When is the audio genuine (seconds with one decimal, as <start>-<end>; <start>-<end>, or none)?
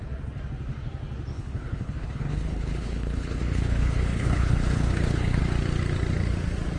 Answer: 0.0-1.3; 5.4-6.8